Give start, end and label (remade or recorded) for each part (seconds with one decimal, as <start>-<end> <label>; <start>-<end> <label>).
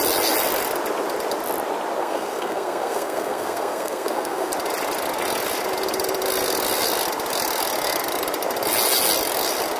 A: 0.0-2.0 recorded; 2.0-4.5 remade; 4.5-9.8 recorded